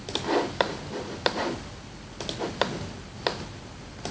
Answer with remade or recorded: recorded